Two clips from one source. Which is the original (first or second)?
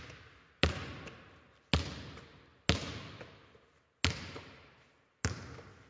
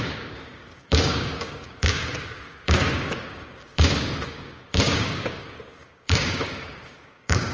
first